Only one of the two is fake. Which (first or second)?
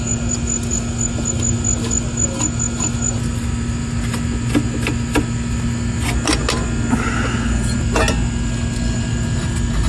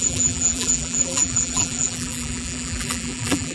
second